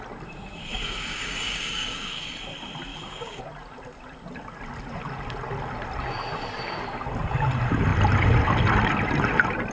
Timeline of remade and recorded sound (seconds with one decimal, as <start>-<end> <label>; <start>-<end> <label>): 0.0-0.7 recorded; 0.7-2.2 remade; 2.2-2.9 recorded; 2.9-3.4 remade; 3.4-9.7 recorded